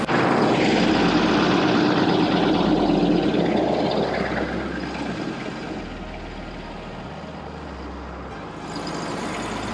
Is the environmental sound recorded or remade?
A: recorded